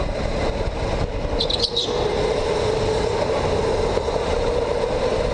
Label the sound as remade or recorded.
recorded